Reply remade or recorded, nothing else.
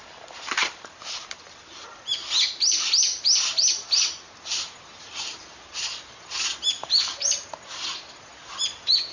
recorded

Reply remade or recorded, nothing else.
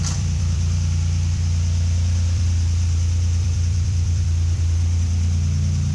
remade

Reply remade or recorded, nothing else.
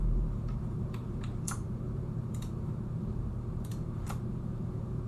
remade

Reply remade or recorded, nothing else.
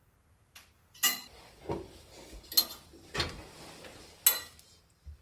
recorded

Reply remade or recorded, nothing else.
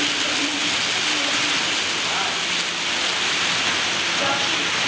recorded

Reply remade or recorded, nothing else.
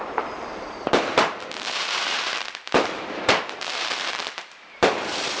remade